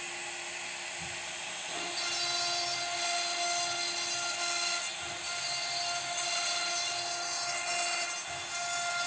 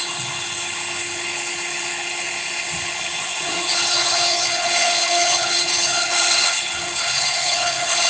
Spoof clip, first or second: second